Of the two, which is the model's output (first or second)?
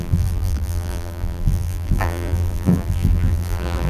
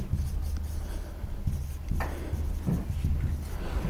first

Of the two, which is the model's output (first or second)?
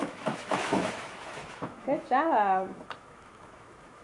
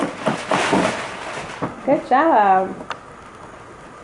first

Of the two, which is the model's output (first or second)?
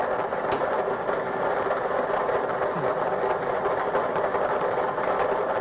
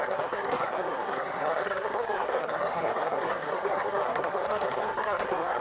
second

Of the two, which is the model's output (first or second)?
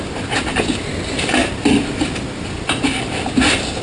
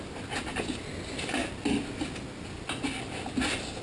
first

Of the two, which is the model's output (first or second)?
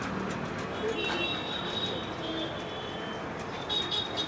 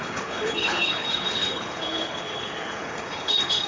second